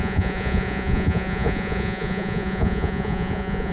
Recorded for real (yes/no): no